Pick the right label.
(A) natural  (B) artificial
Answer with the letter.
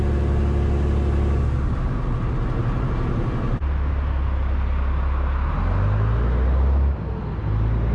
A